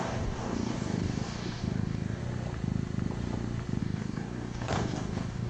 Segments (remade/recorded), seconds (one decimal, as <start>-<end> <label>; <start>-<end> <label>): 0.0-2.2 remade; 2.2-3.8 recorded; 3.8-5.5 remade